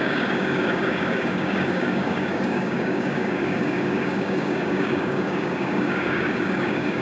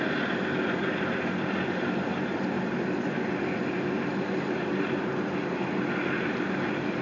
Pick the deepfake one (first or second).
first